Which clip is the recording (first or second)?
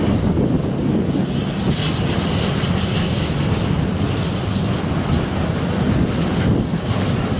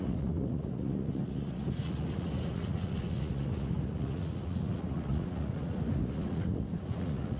first